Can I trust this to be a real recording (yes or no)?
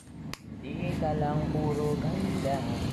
yes